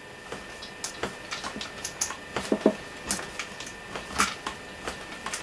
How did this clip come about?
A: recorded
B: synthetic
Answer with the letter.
A